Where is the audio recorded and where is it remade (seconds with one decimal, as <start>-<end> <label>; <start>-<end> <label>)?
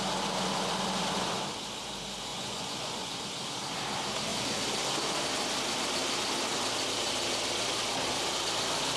0.0-2.3 recorded; 2.3-3.2 remade; 3.2-9.0 recorded